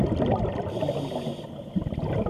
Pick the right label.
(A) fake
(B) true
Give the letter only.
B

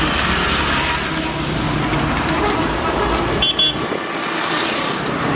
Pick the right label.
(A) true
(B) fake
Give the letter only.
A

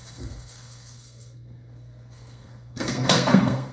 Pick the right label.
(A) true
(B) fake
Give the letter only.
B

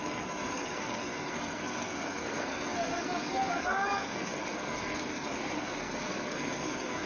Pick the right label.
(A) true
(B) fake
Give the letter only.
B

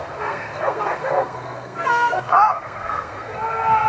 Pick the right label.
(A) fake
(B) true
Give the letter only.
A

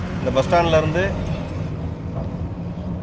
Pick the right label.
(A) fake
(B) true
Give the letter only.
B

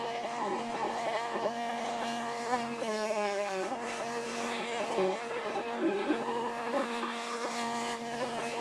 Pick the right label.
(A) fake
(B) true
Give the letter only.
A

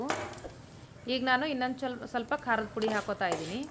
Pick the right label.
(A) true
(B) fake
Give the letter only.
A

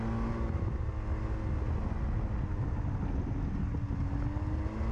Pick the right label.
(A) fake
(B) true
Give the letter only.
B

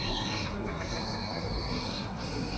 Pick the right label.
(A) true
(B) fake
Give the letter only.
B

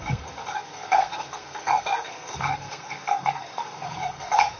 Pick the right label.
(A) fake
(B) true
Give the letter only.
A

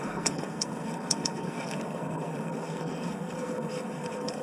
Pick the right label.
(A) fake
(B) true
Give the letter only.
A